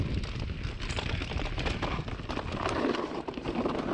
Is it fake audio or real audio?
real